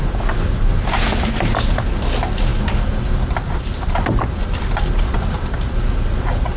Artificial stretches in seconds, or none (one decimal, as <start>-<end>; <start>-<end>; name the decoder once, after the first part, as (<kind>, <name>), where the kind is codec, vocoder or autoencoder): none